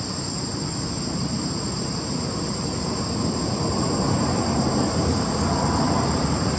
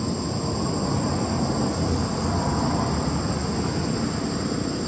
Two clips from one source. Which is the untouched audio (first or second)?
second